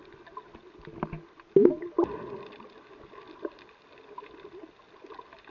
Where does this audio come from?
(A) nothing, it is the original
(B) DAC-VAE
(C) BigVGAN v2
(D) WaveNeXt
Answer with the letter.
A